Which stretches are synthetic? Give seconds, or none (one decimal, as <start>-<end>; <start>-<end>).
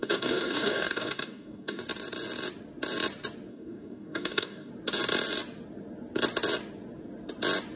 0.0-1.8; 3.5-4.7